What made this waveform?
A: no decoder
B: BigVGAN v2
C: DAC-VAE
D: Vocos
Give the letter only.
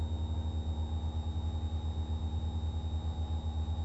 A